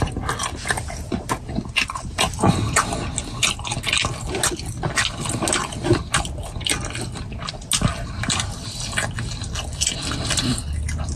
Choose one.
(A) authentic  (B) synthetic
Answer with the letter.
A